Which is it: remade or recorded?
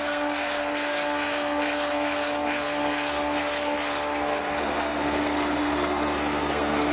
remade